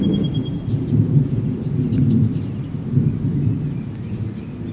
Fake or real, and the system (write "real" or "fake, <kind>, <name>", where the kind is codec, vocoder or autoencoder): real